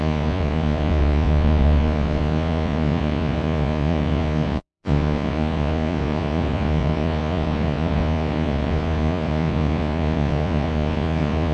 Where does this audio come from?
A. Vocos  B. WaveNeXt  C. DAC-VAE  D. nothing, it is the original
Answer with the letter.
A